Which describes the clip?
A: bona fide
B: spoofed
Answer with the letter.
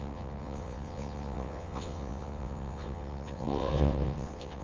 B